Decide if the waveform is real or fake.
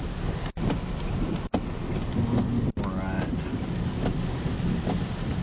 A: real